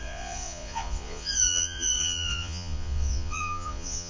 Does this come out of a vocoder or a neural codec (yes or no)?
yes